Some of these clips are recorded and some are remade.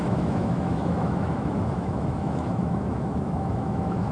remade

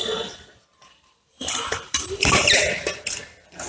remade